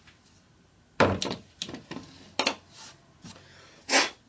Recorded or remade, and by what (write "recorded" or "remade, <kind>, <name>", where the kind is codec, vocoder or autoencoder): recorded